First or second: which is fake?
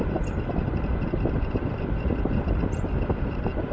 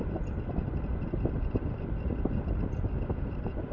first